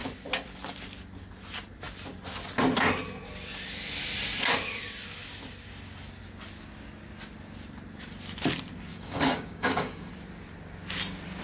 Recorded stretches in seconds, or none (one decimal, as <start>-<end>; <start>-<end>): 0.0-8.9; 10.1-11.4